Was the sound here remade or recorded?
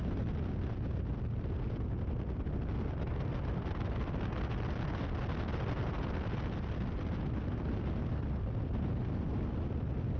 recorded